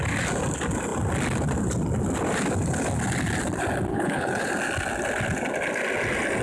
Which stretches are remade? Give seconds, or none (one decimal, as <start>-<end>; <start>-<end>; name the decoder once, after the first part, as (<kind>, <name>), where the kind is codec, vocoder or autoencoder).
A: 3.9-4.5 (codec, HILCodec)